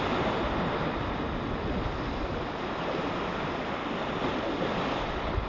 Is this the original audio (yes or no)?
yes